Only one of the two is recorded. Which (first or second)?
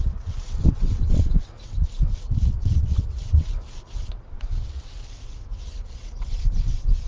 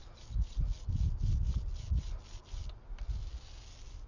second